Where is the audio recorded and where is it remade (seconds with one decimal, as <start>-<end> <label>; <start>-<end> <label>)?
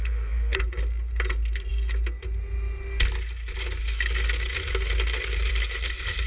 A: 0.0-0.6 remade; 0.6-6.3 recorded